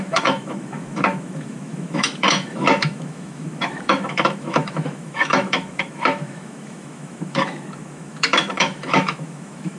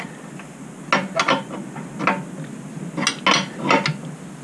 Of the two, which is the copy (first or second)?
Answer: first